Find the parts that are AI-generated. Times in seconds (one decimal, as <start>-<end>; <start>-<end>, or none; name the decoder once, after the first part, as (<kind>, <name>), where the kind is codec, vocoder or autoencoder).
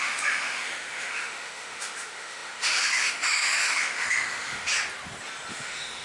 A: 0.0-4.7 (autoencoder, DAC-VAE); 5.5-6.0